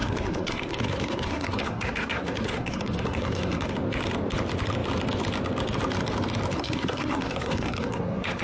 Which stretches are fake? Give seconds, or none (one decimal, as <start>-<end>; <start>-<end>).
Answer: 0.0-3.7; 6.5-8.4